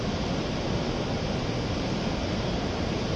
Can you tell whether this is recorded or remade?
recorded